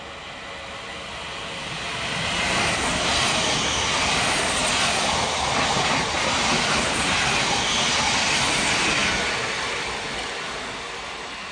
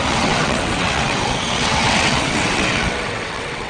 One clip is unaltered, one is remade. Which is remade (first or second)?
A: second